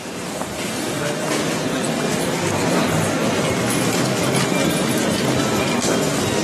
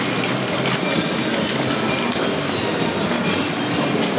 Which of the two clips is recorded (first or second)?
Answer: second